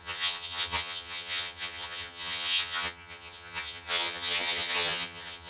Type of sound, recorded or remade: remade